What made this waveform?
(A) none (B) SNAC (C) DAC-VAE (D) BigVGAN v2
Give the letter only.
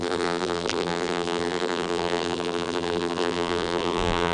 D